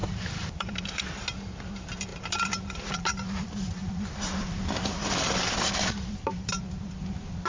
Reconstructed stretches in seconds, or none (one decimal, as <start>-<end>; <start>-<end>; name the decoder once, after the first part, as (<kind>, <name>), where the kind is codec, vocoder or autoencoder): 0.0-1.0 (vocoder, BigVGAN v2); 2.1-6.6